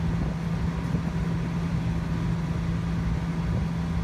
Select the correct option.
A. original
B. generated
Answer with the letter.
A